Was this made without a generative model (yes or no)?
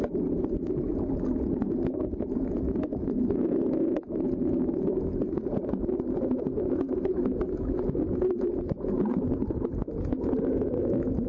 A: no